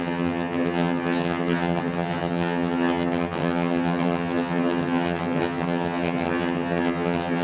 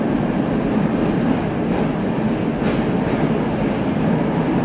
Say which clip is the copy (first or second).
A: first